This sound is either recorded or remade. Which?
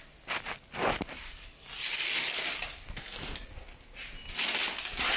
recorded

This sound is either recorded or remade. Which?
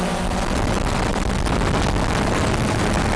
recorded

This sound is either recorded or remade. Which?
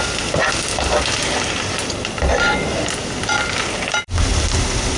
remade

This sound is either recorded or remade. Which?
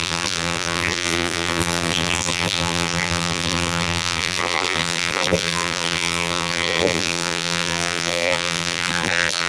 remade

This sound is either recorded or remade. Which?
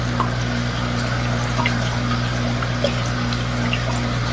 recorded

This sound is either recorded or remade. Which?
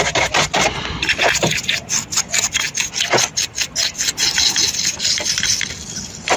recorded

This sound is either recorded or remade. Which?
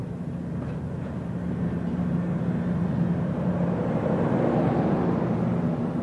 recorded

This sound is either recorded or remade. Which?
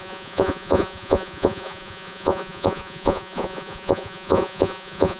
remade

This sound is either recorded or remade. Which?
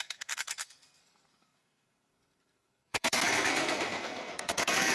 remade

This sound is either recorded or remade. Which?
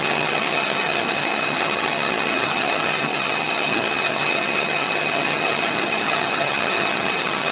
remade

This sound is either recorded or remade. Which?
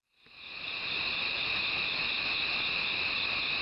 recorded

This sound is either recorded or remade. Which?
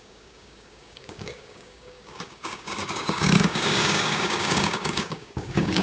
remade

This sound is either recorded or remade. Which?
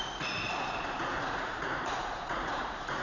remade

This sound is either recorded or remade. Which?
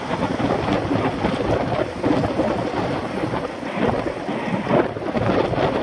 recorded